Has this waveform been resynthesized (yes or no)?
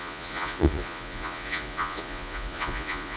yes